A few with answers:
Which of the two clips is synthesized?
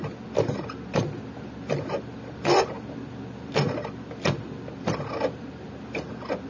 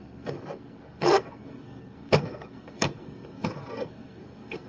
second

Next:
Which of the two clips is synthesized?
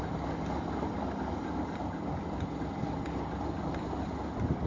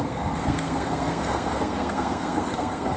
second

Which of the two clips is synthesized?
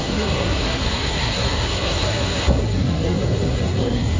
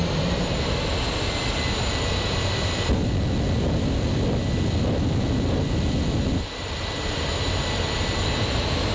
first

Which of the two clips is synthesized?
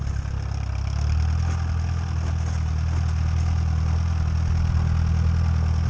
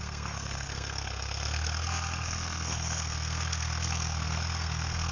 second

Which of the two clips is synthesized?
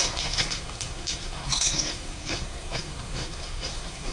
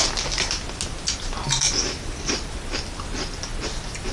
first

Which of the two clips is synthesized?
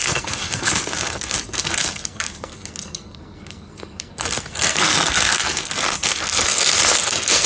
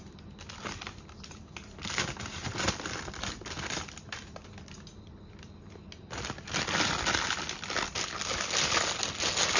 first